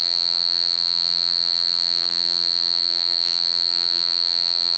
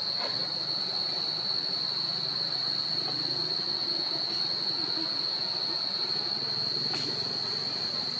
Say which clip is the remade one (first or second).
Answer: first